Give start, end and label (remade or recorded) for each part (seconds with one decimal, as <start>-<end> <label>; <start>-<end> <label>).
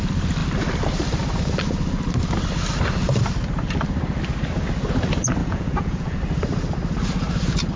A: 0.0-5.4 recorded; 5.4-6.2 remade; 6.2-7.8 recorded